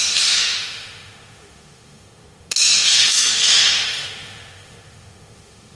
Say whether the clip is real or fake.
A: fake